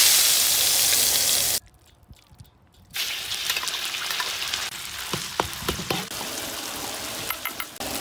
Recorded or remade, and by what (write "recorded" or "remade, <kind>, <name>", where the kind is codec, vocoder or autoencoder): recorded